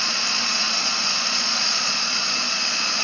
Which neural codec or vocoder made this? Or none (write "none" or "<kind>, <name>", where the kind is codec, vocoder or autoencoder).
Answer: vocoder, Vocos